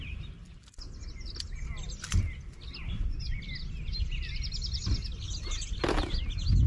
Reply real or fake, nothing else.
real